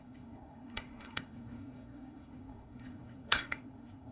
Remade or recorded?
remade